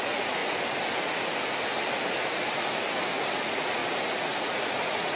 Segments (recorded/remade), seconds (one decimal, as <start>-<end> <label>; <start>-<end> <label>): 0.0-0.4 remade; 0.4-3.3 recorded; 3.3-3.8 remade; 3.8-4.4 recorded; 4.4-5.2 remade